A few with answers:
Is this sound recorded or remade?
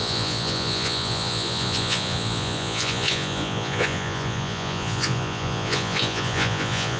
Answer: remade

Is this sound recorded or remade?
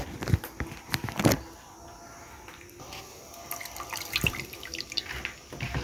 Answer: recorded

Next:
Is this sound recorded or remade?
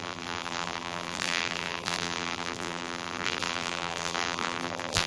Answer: remade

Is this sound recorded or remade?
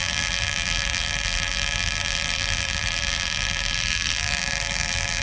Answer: remade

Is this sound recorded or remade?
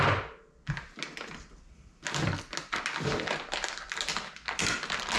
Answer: recorded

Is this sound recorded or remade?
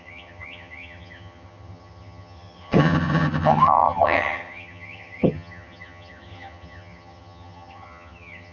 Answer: remade